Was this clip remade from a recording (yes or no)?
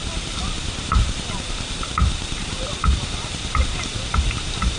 yes